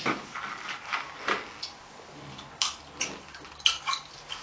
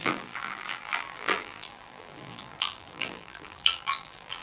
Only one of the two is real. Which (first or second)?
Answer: first